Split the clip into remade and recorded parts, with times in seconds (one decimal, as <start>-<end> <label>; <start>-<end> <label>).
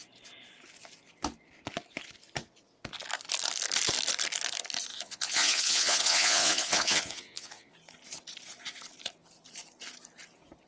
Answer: 0.0-4.9 recorded; 4.9-7.7 remade; 7.7-10.7 recorded